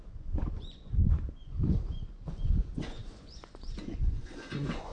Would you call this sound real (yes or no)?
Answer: no